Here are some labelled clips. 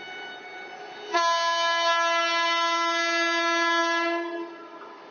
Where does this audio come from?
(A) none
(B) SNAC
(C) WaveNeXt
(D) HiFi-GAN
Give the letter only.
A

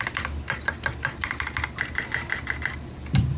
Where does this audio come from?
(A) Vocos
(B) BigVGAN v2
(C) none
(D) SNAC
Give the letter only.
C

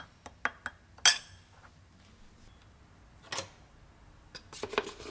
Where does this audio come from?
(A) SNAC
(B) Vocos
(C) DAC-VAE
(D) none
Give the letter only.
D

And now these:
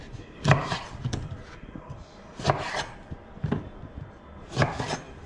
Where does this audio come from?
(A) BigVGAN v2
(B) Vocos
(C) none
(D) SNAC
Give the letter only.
A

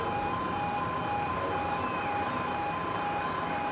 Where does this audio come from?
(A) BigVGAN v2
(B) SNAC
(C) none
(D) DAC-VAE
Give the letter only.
C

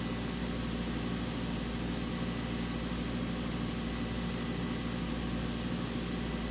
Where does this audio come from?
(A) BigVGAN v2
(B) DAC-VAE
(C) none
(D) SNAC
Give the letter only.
C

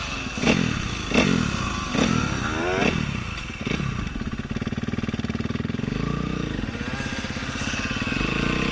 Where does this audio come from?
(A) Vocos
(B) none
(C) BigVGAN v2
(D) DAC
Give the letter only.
B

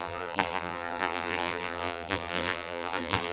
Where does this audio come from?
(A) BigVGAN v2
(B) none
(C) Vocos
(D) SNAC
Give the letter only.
A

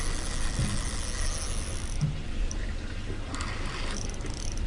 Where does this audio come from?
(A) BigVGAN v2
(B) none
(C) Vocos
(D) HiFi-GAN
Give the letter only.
B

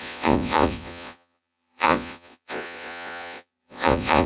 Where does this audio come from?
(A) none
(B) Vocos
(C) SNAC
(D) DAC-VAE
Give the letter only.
B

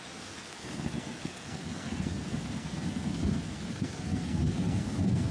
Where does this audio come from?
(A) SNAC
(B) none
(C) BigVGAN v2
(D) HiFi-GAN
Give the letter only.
A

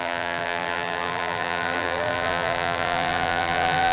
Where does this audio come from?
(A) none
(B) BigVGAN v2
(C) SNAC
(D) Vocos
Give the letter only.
B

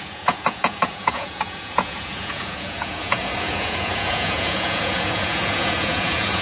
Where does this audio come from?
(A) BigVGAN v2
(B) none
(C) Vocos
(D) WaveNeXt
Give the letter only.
C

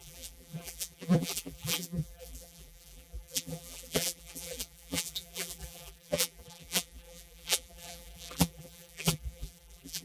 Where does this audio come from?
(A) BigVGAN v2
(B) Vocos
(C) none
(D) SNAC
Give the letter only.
A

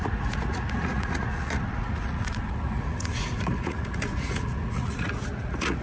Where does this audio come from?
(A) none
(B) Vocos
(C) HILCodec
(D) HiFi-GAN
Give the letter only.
B